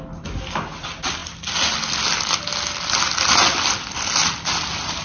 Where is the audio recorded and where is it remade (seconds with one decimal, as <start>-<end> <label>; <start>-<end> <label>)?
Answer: 0.0-5.0 recorded